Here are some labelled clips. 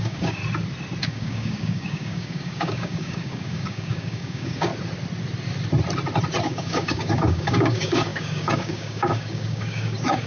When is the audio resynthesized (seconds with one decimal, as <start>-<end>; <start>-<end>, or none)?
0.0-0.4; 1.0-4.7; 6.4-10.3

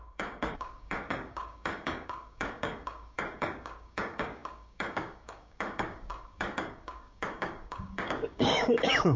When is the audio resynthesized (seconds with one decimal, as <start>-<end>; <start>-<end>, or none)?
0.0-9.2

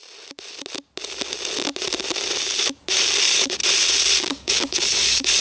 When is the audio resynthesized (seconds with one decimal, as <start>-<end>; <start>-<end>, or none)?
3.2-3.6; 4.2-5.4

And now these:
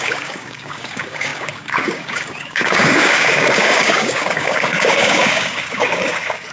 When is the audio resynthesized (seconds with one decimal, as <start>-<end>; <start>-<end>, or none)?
0.0-6.5